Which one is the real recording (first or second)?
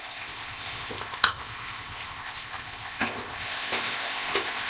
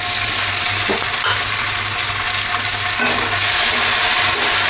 second